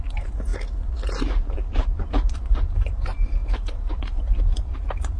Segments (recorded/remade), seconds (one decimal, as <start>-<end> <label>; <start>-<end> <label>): 0.0-0.5 remade; 0.5-2.1 recorded; 2.1-5.2 remade